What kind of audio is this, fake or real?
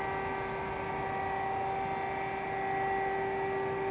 real